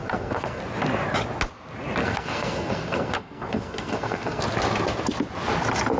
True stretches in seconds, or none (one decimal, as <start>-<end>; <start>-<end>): 0.6-2.0; 4.4-6.0